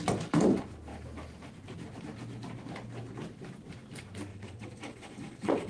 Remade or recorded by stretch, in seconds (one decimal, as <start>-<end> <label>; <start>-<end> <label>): 0.0-4.3 recorded; 4.3-5.7 remade